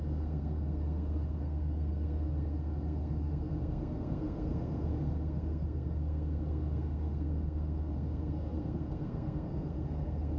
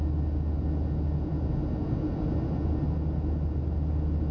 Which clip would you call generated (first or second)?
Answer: first